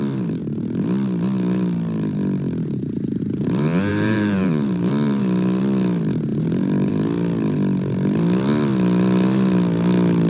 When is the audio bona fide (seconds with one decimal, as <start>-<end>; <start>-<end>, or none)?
0.0-3.9; 5.2-6.3; 6.9-10.3